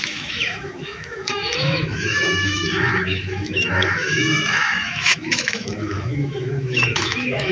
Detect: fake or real fake